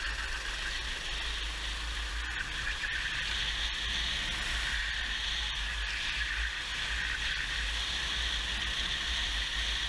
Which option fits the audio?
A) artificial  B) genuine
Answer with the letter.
B